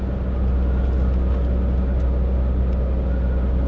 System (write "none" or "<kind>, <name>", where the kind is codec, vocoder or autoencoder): none